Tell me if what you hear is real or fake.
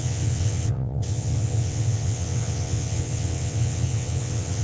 fake